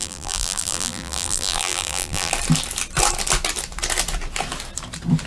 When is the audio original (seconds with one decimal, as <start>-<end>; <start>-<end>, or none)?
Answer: 2.3-5.3